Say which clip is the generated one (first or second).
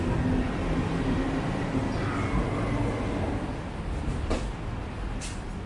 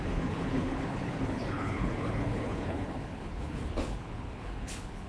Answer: second